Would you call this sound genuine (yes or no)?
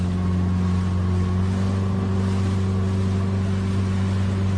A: yes